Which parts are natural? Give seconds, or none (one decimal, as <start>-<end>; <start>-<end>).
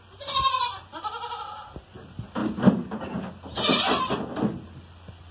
0.0-5.3